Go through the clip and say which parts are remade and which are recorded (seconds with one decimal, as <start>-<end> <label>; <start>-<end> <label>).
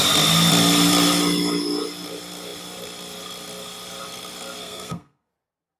0.0-4.6 recorded; 4.6-5.3 remade; 5.3-5.8 recorded